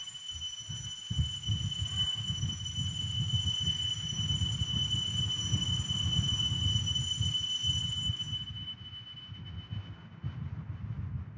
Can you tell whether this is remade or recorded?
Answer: recorded